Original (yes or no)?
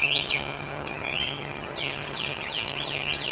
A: no